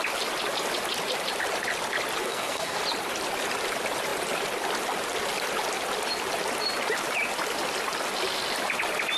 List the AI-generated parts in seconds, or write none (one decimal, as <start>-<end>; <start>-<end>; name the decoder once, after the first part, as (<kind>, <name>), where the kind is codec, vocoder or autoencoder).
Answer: 2.2-2.8 (codec, SNAC)